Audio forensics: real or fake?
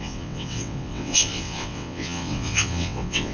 fake